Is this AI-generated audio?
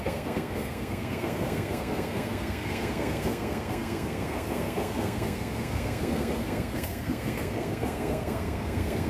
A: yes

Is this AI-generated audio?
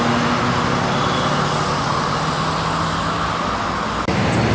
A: no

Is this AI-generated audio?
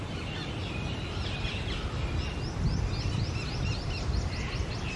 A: no